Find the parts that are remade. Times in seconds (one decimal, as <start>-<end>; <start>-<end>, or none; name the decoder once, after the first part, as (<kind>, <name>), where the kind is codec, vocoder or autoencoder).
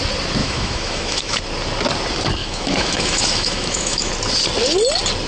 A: 0.4-1.4 (autoencoder, DAC-VAE); 2.4-4.1